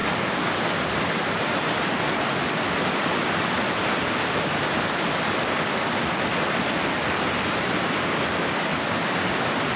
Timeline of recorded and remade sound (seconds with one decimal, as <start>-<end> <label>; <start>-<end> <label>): 0.0-9.8 recorded